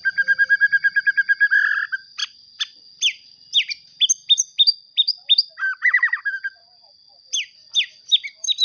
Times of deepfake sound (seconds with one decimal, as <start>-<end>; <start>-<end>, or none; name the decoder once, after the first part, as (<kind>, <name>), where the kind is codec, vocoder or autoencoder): 4.8-6.6 (vocoder, BigVGAN v2)